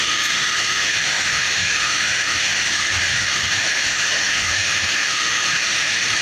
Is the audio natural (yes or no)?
no